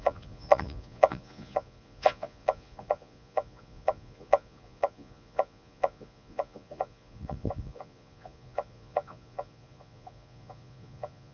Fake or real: fake